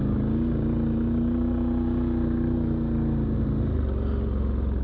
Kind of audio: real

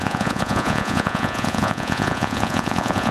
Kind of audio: fake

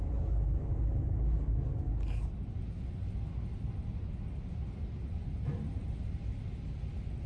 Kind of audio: real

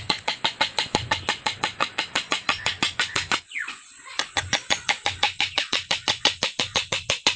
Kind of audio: fake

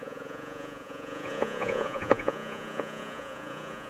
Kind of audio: fake